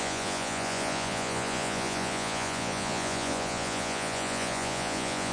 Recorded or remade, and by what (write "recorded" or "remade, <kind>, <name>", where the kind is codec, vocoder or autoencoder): remade, vocoder, Vocos